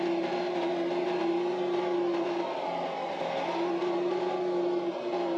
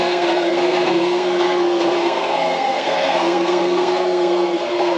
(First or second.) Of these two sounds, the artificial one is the second